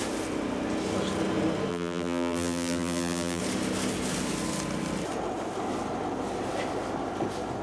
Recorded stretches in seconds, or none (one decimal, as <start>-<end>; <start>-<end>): 0.0-1.7; 3.4-7.6